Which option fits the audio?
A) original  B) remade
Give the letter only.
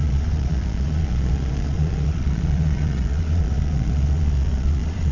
B